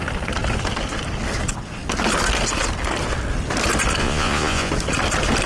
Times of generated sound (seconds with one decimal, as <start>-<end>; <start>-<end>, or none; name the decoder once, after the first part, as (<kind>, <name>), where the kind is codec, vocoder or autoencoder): 4.0-4.7 (vocoder, Vocos)